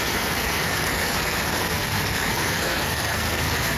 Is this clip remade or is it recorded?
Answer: remade